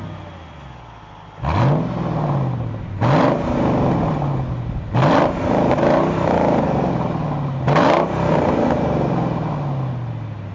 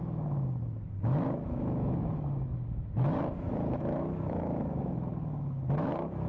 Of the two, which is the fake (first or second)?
second